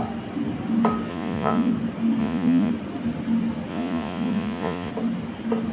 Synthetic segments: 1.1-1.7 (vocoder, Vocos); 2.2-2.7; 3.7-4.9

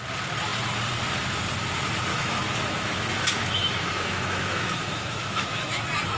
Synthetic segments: 2.1-5.8 (autoencoder, DAC-VAE)

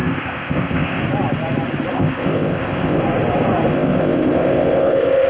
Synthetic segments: 0.0-1.0 (codec, ZipCodec); 1.9-3.0; 3.7-5.3